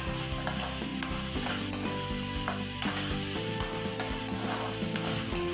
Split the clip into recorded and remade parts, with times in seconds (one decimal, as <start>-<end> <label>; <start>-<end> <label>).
0.0-5.5 recorded